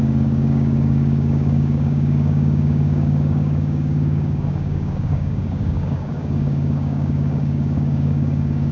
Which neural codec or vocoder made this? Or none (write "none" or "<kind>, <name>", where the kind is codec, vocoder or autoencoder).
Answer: codec, DAC